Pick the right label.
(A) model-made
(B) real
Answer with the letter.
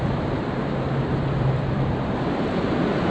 A